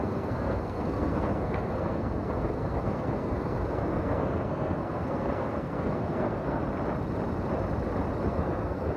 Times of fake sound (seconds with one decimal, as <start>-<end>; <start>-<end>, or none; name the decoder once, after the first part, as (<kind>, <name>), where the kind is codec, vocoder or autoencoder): 0.0-6.6 (codec, SNAC); 8.3-9.0

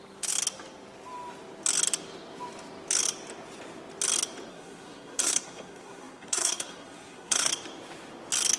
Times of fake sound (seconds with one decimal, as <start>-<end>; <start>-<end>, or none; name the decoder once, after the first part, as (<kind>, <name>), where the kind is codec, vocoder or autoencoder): 4.5-7.5 (codec, SNAC)

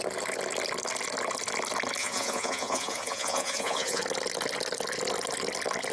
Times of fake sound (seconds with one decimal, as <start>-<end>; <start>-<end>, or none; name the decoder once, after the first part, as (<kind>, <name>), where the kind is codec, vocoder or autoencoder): 2.0-4.0 (vocoder, Vocos)

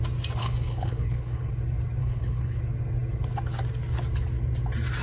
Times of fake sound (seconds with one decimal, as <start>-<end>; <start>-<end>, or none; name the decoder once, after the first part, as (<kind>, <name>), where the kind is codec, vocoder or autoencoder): 0.4-1.5 (codec, HILCodec); 2.0-2.6

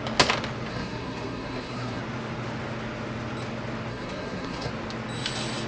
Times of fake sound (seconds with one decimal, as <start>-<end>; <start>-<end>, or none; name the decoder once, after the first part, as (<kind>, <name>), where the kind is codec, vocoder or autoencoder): 0.7-2.0 (codec, SNAC); 3.9-4.7

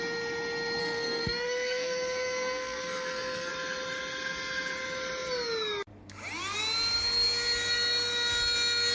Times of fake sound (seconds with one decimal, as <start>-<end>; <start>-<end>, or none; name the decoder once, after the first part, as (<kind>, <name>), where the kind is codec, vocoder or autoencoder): 0.8-3.5 (codec, SNAC)

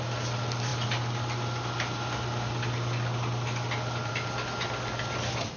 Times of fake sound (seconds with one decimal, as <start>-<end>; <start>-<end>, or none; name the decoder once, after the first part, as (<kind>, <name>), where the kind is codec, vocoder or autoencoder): none